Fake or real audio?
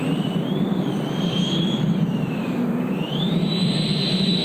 fake